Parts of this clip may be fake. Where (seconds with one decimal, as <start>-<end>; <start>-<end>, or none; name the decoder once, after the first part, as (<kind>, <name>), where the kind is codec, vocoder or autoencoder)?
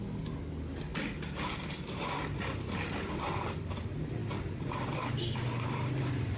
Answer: none